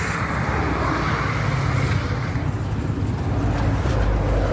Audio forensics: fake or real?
real